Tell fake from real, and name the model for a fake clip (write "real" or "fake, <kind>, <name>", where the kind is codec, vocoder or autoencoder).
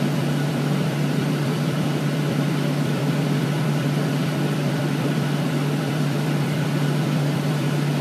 fake, vocoder, BigVGAN v2